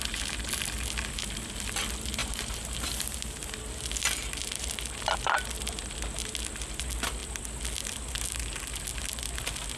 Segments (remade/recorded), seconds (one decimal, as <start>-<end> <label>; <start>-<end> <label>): 0.0-2.2 recorded; 2.2-2.8 remade; 2.8-9.8 recorded